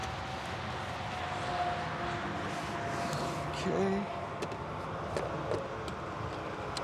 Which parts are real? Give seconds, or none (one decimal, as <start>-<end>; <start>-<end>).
0.0-6.8